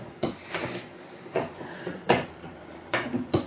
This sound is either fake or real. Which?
fake